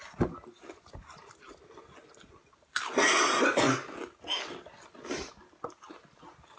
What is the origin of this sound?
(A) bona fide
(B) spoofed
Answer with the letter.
A